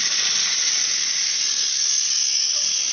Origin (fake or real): real